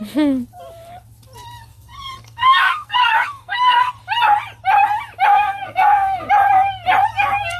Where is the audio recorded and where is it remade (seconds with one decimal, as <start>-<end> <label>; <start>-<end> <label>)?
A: 0.0-1.7 recorded; 1.7-3.9 remade; 3.9-5.3 recorded; 5.3-6.3 remade; 6.3-7.6 recorded